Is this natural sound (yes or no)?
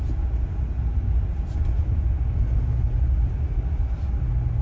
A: yes